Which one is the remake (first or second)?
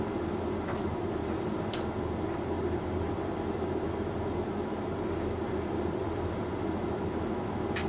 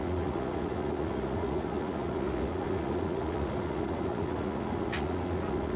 second